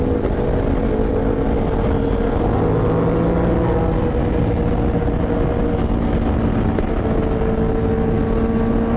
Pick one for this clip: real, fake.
real